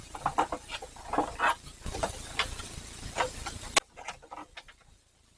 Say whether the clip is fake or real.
real